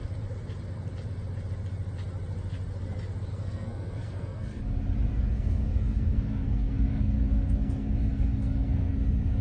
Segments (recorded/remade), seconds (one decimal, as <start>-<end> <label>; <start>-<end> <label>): 0.0-3.3 recorded; 3.3-4.6 remade; 4.6-5.1 recorded; 5.1-9.4 remade

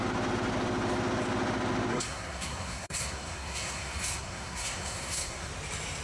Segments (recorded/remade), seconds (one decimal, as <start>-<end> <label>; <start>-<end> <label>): 0.0-1.9 recorded; 1.9-5.5 remade; 5.5-6.0 recorded

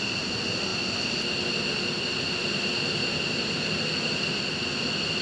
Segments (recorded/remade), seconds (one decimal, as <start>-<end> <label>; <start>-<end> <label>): 0.0-5.2 recorded